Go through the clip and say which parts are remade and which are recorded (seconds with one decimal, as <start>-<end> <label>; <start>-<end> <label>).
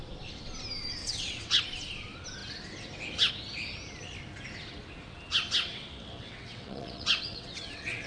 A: 0.0-1.0 recorded; 1.0-1.6 remade; 1.6-5.7 recorded; 5.7-8.1 remade